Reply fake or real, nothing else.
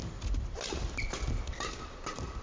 real